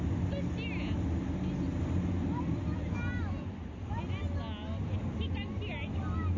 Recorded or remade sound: recorded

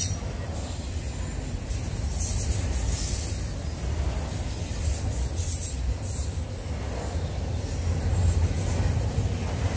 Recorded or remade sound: recorded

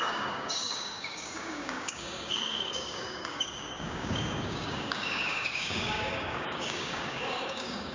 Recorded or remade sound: remade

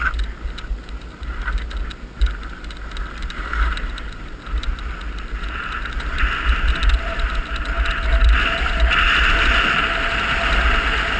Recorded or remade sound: recorded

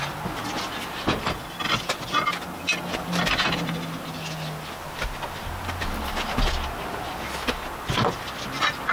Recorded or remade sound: recorded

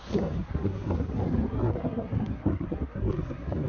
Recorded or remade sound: remade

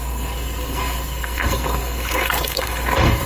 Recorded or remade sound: remade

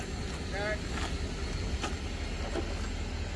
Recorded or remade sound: recorded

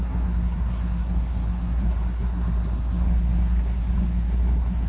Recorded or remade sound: remade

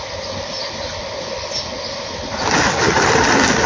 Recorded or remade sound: recorded